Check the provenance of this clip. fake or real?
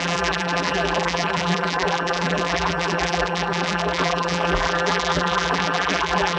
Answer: fake